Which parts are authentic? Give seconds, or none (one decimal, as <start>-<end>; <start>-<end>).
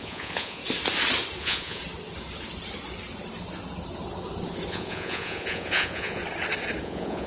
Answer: 0.6-1.4; 1.8-4.7; 6.2-6.8